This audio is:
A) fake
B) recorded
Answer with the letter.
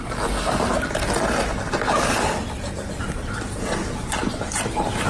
B